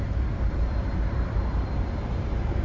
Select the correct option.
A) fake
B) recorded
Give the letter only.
A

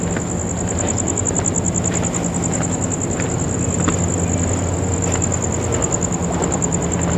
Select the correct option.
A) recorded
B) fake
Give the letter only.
A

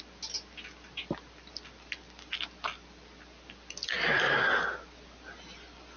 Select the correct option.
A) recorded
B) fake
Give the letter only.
A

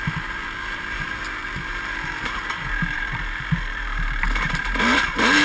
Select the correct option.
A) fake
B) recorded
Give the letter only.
A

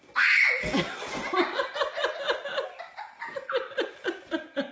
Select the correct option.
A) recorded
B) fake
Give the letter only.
A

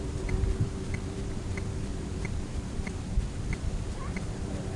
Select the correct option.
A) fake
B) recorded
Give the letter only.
A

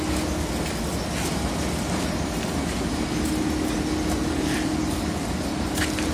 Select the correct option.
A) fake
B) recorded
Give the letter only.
B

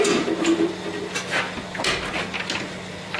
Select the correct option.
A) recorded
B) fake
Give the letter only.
A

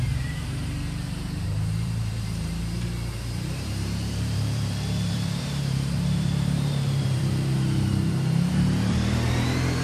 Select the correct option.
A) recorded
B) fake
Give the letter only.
B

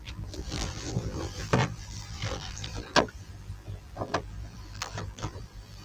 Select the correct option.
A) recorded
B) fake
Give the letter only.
B